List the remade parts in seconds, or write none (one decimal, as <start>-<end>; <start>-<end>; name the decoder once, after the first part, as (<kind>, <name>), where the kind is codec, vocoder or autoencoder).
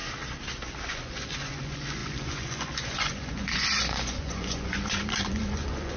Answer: 0.9-6.0 (vocoder, Vocos)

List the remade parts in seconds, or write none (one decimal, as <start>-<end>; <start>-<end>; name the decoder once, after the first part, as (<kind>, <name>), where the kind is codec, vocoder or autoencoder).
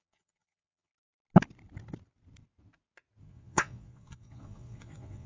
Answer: 0.0-0.9 (vocoder, Vocos); 3.2-5.3